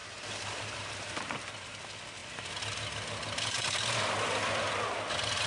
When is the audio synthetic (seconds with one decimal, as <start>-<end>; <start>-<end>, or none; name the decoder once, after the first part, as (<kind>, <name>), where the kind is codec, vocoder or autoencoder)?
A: none